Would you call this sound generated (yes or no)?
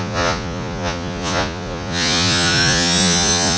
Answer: yes